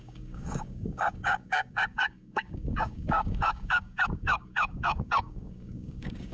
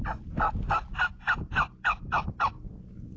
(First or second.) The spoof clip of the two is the first